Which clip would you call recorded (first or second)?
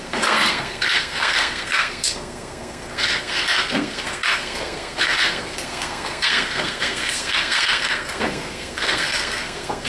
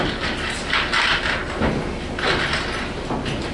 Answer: second